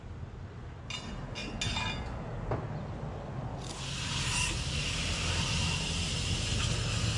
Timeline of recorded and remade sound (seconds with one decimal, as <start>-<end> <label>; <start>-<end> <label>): 0.0-7.2 recorded